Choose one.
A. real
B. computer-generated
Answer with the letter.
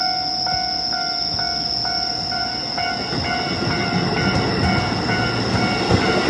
A